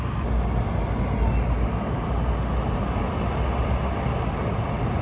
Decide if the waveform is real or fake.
real